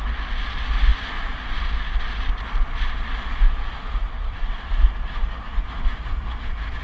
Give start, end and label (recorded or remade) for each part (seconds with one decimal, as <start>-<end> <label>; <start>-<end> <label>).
0.0-4.0 recorded; 4.0-4.7 remade; 4.7-6.8 recorded